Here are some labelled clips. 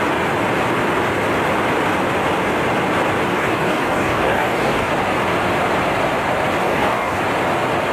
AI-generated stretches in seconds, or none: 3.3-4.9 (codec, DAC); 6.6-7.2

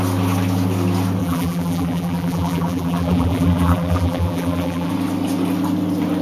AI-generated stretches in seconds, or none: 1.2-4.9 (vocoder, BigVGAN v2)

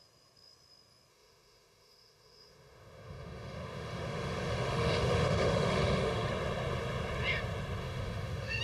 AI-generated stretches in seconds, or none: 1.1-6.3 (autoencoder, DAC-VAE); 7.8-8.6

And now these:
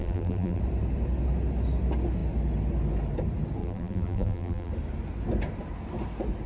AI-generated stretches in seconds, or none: 0.0-0.6 (vocoder, BigVGAN v2); 3.6-4.7

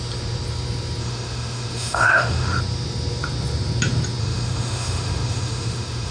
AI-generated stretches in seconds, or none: 1.0-2.6 (autoencoder, DAC-VAE); 4.2-6.1

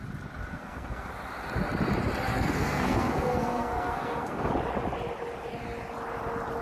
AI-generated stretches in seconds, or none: 0.5-1.1 (codec, SNAC); 2.3-4.5

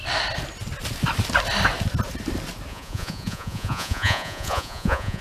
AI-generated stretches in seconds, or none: 2.7-5.2 (vocoder, Vocos)